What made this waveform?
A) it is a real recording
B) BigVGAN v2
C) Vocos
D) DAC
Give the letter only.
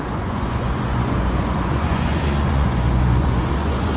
C